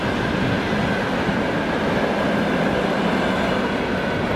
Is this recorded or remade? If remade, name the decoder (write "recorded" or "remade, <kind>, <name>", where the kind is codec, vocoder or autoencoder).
recorded